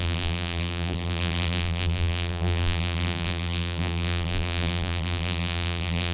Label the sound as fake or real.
fake